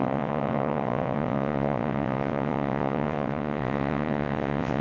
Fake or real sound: fake